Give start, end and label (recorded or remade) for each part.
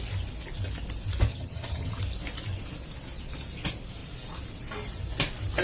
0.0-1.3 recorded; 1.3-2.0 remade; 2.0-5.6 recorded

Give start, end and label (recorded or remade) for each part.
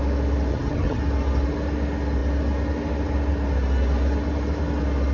0.0-0.5 recorded; 0.5-1.0 remade; 1.0-5.1 recorded